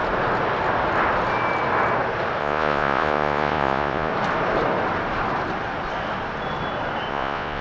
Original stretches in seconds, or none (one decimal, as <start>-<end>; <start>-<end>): 0.0-2.4; 4.1-7.1